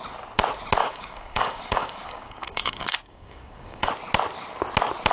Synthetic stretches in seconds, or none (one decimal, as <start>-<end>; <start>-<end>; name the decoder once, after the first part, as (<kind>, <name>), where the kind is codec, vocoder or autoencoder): 0.8-3.9 (codec, DAC)